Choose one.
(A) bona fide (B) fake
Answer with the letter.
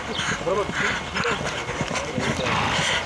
A